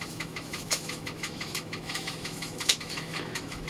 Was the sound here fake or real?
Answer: fake